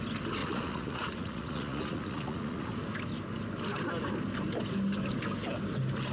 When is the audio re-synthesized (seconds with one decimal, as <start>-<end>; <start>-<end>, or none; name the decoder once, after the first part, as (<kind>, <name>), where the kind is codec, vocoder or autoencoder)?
0.4-2.7 (vocoder, Vocos)